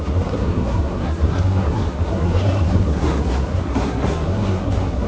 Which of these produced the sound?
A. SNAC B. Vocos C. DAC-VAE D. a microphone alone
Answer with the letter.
A